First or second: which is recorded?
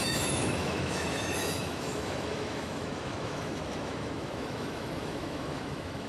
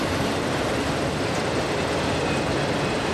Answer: second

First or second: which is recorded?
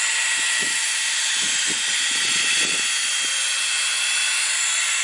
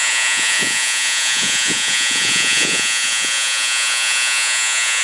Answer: first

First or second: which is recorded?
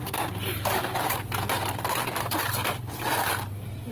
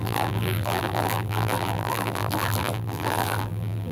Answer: first